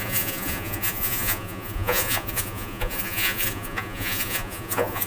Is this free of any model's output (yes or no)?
no